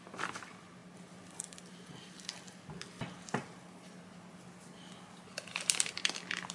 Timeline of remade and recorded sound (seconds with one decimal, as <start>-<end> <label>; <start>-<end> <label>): 0.0-6.5 recorded